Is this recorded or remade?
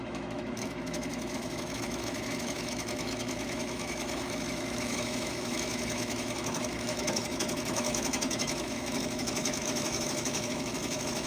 remade